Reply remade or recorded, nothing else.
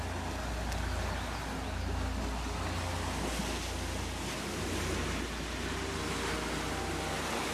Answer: recorded